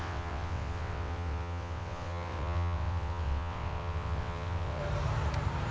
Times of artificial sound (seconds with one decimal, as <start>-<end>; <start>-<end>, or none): 0.0-4.8